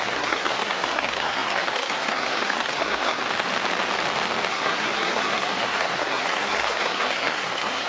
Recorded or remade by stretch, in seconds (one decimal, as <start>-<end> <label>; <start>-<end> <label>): 0.0-3.2 remade; 3.2-4.5 recorded; 4.5-7.9 remade